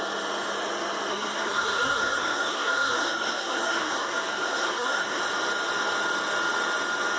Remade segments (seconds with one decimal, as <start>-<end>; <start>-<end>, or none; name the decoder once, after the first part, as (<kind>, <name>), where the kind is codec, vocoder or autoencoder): 1.1-5.2 (codec, SNAC)